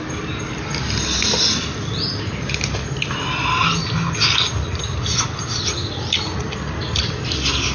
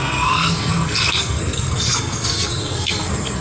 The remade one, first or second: second